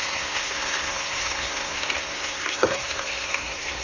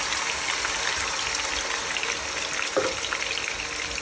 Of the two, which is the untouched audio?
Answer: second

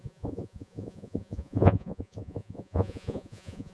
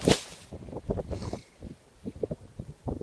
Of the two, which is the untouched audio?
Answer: second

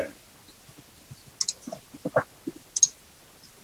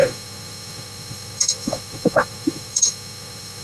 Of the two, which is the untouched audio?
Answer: first